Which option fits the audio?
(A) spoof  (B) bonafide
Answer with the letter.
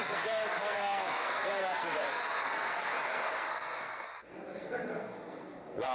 A